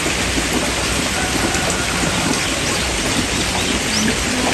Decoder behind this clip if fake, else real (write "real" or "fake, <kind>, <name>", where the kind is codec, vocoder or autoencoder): real